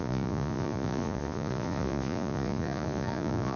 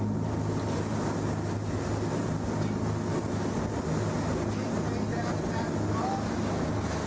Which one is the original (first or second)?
second